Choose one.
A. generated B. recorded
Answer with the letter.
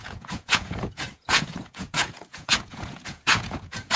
A